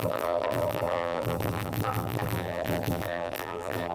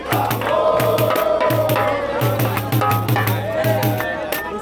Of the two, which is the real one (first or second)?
second